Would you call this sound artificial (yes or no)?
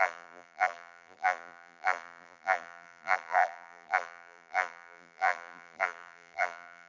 yes